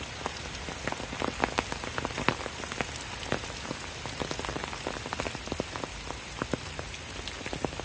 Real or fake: real